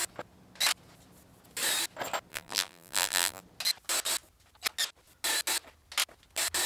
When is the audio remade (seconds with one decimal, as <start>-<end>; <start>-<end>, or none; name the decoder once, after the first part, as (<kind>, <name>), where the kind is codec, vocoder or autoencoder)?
2.3-3.4 (vocoder, BigVGAN v2)